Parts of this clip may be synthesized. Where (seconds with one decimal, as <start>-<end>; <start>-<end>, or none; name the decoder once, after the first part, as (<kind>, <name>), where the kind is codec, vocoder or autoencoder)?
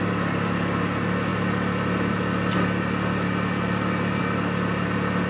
none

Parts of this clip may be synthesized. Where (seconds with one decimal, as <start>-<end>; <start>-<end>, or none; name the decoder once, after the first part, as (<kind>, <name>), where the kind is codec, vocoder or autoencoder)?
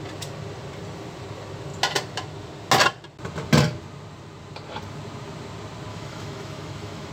5.9-7.1 (autoencoder, DAC-VAE)